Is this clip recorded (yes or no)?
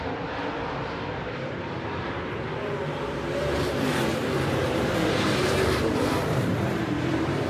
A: no